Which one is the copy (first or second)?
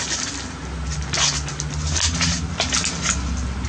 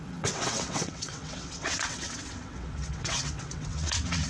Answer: second